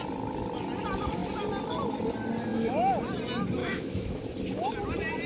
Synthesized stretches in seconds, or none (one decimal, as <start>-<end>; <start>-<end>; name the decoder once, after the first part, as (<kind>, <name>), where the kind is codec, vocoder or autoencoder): 2.5-3.0 (autoencoder, DAC-VAE); 3.6-4.2